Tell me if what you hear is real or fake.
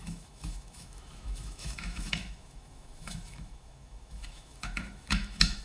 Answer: fake